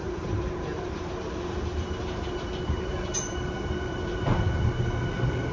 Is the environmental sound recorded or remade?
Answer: remade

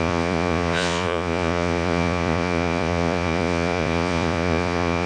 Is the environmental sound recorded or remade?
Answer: remade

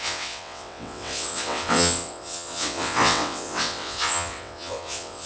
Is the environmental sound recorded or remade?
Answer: remade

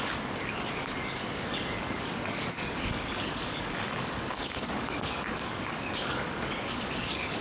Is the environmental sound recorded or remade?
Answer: remade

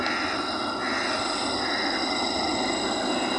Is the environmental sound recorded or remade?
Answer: recorded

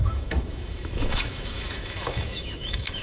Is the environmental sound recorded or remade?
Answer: remade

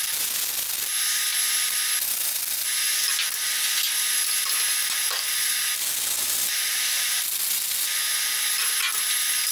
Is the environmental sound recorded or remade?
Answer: recorded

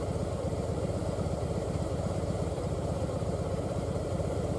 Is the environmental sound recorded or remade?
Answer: remade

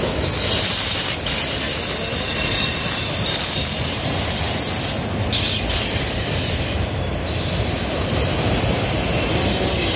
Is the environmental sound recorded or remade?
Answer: recorded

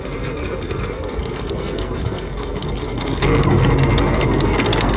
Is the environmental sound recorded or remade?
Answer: remade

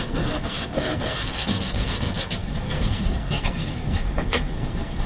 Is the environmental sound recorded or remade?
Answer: remade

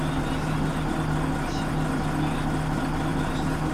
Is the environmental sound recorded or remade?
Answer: recorded